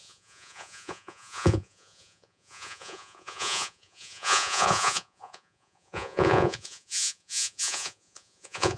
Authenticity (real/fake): fake